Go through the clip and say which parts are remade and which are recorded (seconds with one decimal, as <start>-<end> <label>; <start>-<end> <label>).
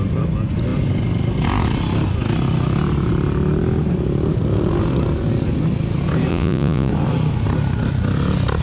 0.0-6.3 recorded; 6.3-6.9 remade; 6.9-8.6 recorded